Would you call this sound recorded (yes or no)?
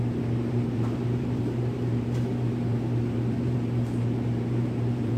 no